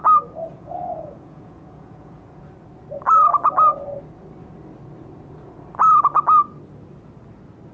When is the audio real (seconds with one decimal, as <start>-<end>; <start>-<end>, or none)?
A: 0.0-0.5; 2.4-7.7